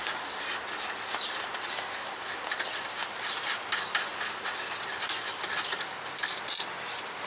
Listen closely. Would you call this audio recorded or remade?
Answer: recorded